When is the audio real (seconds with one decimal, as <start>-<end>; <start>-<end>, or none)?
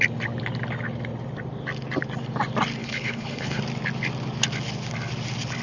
0.0-2.8; 3.6-5.6